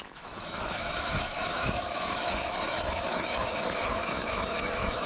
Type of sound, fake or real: fake